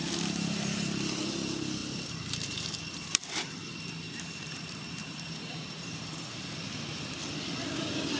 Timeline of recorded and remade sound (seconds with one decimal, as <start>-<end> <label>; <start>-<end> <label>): 0.0-1.8 recorded; 1.8-6.2 remade; 6.2-8.2 recorded